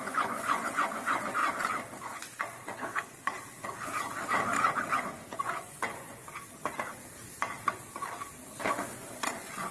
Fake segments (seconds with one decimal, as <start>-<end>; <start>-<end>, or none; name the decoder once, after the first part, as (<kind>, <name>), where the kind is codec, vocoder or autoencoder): 0.0-1.4 (vocoder, Vocos); 2.0-3.3; 4.9-6.2; 8.6-9.7

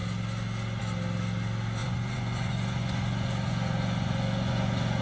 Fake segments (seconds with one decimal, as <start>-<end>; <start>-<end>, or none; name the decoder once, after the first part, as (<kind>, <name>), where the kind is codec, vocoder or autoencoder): 1.8-5.0 (vocoder, Vocos)

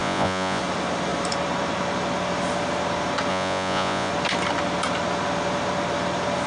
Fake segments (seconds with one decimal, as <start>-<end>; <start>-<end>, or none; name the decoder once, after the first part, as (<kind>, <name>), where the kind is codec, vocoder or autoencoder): 0.0-0.6 (vocoder, Vocos); 3.3-4.1

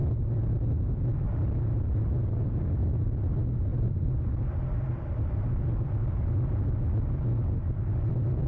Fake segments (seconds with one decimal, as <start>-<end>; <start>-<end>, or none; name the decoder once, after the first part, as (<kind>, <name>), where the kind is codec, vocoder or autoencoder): 3.7-4.3 (vocoder, Vocos)